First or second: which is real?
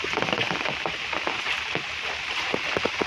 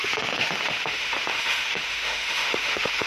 first